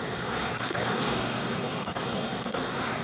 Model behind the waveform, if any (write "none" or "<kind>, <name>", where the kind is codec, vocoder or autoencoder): codec, SNAC